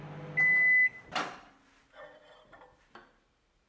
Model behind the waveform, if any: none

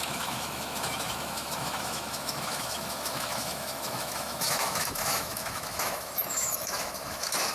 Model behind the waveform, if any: autoencoder, DAC-VAE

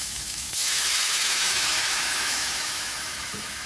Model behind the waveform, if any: autoencoder, DAC-VAE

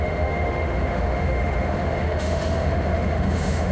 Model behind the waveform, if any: autoencoder, DAC-VAE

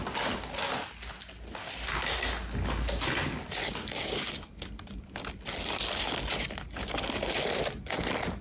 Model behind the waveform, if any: none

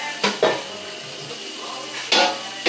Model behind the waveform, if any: none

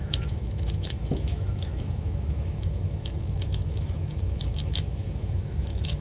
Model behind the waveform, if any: autoencoder, DAC-VAE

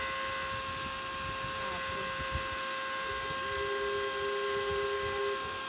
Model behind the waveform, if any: none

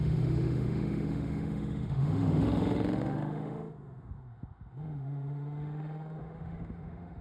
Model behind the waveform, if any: autoencoder, DAC-VAE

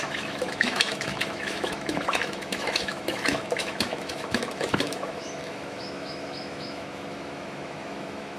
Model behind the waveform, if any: autoencoder, DAC-VAE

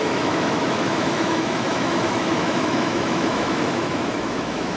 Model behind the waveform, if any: autoencoder, DAC-VAE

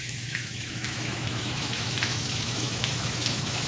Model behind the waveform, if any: autoencoder, DAC-VAE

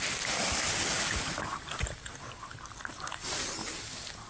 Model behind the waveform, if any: none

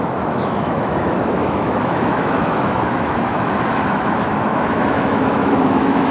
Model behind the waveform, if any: autoencoder, DAC-VAE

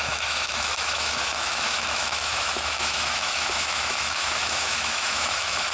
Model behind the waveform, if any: autoencoder, DAC-VAE